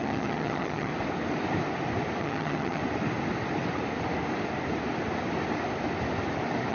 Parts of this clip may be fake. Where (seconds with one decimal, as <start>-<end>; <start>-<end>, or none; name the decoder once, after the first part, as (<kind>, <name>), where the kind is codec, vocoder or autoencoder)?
0.0-0.9 (vocoder, HiFi-GAN); 2.2-2.8